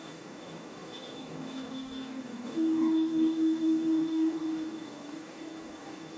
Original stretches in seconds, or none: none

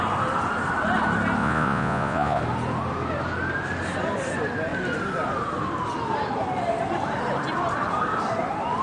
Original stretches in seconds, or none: 0.0-1.4; 2.4-8.8